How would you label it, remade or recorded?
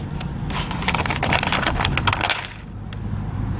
recorded